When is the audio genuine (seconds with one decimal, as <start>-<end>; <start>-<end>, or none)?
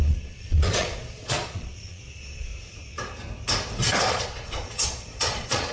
2.5-4.1